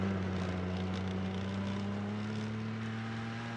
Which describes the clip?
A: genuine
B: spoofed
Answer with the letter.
A